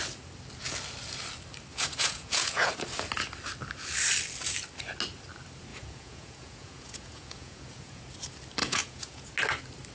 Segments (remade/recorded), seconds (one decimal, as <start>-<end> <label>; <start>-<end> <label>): 0.0-1.7 recorded; 1.7-2.7 remade; 2.7-5.7 recorded; 5.7-8.0 remade; 8.0-8.6 recorded; 8.6-9.3 remade; 9.3-9.9 recorded